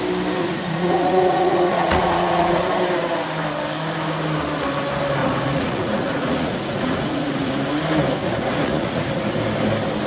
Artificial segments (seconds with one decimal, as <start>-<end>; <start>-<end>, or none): 0.4-2.6; 5.2-7.5; 8.2-9.2